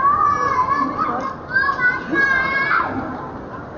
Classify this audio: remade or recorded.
recorded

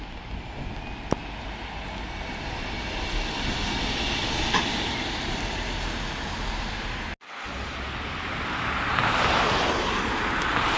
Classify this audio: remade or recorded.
recorded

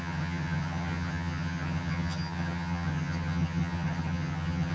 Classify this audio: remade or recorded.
remade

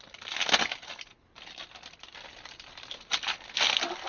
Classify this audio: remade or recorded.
recorded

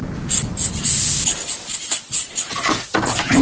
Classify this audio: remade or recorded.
recorded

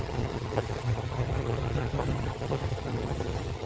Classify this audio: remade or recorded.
remade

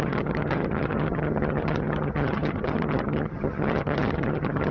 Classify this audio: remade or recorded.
remade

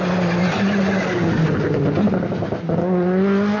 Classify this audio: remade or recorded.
recorded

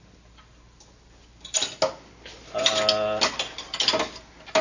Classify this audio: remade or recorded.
recorded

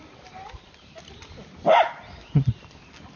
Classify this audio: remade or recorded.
recorded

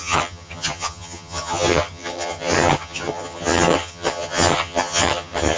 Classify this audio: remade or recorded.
remade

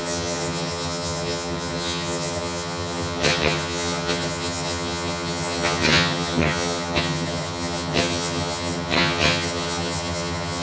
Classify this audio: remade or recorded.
remade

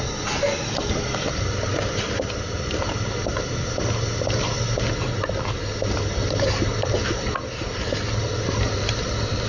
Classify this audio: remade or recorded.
recorded